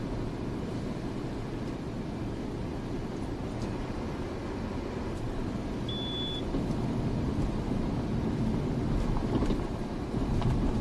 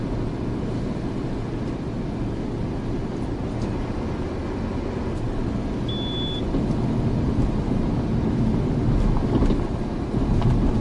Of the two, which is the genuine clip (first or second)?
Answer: second